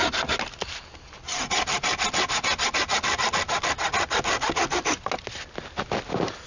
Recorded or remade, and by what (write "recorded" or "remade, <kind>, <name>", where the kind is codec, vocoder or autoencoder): recorded